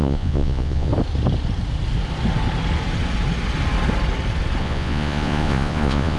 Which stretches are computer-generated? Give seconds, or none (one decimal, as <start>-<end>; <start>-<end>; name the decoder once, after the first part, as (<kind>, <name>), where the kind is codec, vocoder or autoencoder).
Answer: 0.0-0.9 (vocoder, Vocos); 4.6-6.2